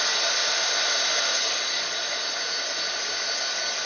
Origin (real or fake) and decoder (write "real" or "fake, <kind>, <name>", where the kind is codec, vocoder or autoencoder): real